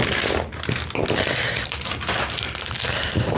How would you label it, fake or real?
real